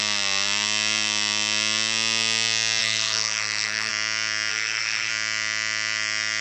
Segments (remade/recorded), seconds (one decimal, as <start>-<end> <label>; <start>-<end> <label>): 0.0-2.8 recorded; 2.8-3.9 remade; 3.9-4.5 recorded; 4.5-5.1 remade; 5.1-6.4 recorded